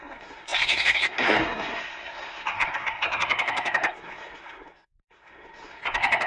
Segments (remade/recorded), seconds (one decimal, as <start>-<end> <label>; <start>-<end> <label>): 0.0-6.3 remade